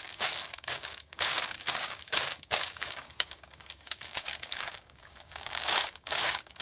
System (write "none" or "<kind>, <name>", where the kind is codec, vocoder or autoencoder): codec, DAC